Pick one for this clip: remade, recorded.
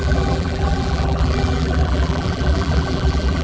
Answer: remade